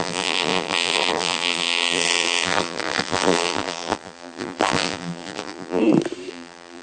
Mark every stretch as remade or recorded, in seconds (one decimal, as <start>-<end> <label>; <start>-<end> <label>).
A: 0.0-5.8 remade; 5.8-6.3 recorded; 6.3-6.8 remade